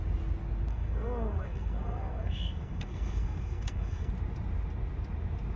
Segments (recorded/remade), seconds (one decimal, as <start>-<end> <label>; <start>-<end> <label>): 0.0-0.7 recorded; 0.7-4.1 remade; 4.1-5.6 recorded